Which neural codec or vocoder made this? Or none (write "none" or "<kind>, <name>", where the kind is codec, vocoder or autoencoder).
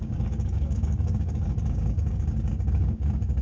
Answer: codec, DAC